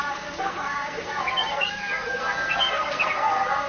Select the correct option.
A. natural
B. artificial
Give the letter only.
B